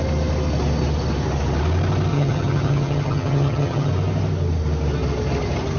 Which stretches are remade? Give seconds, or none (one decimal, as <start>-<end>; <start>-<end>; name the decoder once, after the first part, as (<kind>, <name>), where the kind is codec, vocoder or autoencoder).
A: 2.1-3.9 (vocoder, HiFi-GAN)